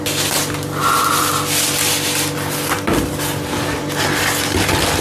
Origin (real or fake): real